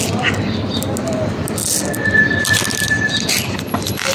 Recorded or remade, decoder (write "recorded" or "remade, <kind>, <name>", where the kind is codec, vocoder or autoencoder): recorded